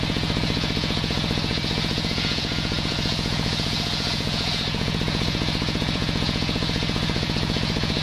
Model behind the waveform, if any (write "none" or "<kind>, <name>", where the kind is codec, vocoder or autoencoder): vocoder, Vocos